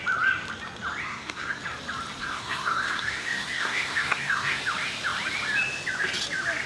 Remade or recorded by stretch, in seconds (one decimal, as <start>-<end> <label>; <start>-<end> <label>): 0.0-1.0 recorded; 1.0-1.6 remade; 1.6-2.2 recorded; 2.2-4.6 remade; 4.6-6.7 recorded